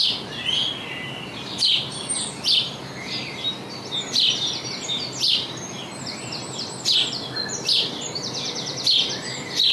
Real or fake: real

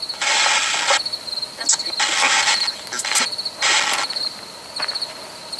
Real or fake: real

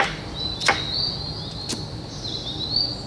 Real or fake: real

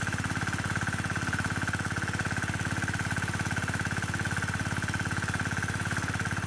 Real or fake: real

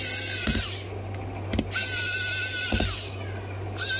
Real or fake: real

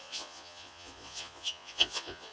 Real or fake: fake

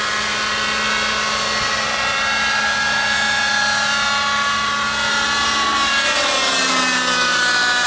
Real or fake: real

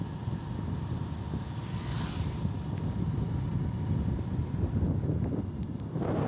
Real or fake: real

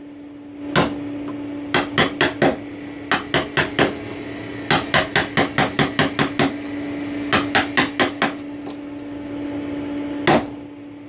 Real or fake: real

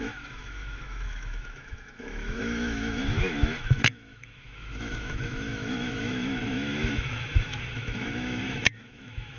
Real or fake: fake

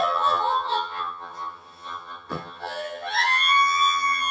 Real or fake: fake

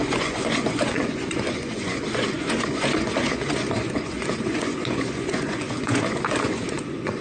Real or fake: fake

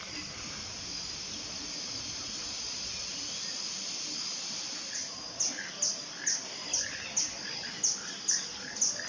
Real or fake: real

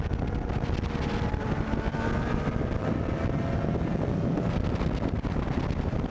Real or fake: real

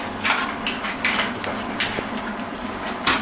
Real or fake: real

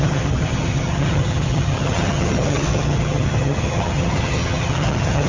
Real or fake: fake